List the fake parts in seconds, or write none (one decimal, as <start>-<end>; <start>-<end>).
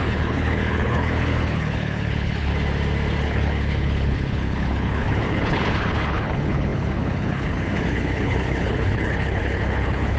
0.0-2.5; 3.2-10.2